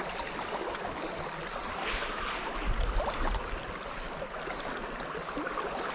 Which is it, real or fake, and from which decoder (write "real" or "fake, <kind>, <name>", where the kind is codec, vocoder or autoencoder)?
real